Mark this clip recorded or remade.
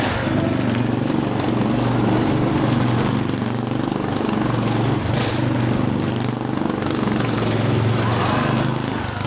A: recorded